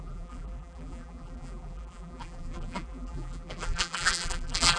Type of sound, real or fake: fake